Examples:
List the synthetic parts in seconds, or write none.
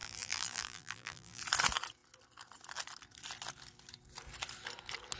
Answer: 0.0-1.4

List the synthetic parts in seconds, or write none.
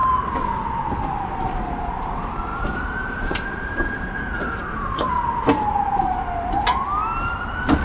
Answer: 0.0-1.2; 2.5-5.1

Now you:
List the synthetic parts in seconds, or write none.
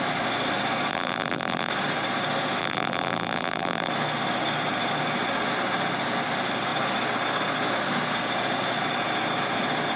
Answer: 0.9-1.7; 2.6-3.9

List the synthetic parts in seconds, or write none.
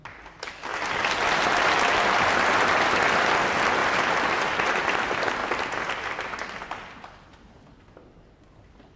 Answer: 3.8-4.4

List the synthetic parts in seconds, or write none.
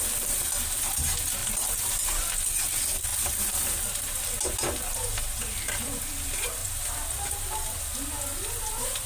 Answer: 1.4-2.2